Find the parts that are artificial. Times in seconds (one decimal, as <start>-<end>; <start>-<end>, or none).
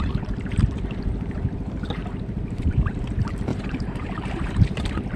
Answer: 2.0-3.0; 3.5-4.8